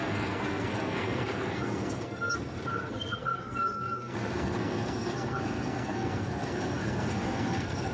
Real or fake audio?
fake